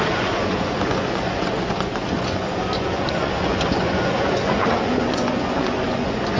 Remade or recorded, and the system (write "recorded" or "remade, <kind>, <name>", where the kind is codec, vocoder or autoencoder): remade, vocoder, Vocos